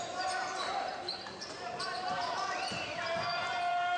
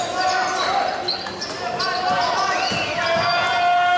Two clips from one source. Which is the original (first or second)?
second